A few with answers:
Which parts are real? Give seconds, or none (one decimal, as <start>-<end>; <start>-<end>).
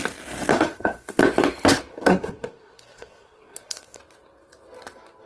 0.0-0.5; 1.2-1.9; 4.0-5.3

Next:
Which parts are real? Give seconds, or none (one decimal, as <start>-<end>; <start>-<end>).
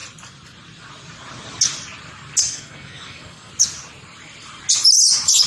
0.0-2.5; 3.5-5.5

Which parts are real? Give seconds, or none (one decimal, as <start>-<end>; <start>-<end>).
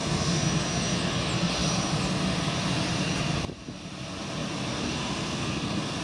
0.0-4.7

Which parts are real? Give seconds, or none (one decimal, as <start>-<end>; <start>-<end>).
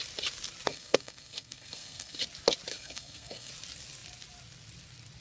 0.0-0.7; 2.2-2.7; 3.5-5.2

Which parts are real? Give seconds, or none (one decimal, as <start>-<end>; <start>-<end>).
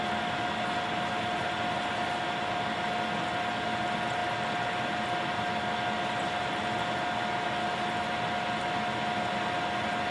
0.0-10.1